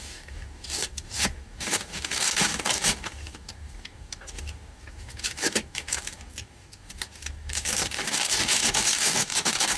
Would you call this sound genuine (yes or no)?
no